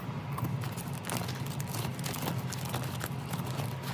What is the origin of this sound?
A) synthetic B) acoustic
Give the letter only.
B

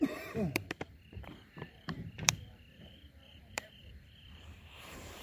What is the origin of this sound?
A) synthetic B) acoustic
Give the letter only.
A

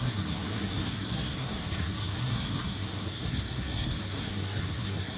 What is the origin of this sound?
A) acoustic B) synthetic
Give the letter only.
B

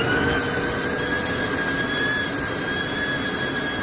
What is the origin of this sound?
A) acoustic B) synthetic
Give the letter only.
A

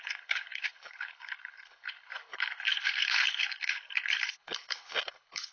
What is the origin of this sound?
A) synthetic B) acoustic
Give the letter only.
A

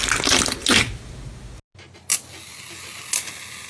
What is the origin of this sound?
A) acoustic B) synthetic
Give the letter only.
A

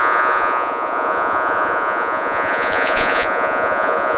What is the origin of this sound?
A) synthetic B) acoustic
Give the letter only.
A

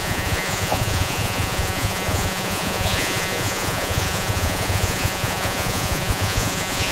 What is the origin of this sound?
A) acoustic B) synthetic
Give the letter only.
B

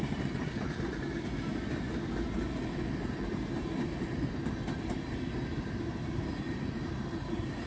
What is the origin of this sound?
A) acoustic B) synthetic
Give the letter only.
A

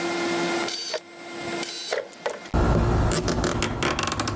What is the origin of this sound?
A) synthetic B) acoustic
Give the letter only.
B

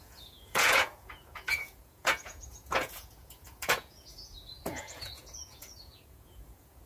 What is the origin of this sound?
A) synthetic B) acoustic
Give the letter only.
A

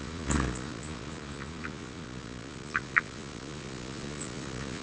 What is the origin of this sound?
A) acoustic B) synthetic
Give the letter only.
B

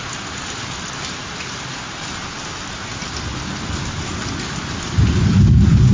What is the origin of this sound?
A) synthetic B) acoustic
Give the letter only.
B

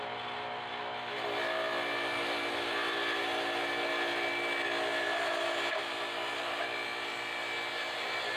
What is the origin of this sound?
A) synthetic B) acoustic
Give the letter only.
B